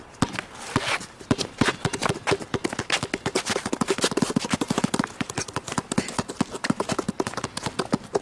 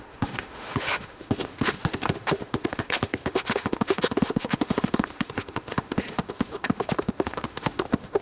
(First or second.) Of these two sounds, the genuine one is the first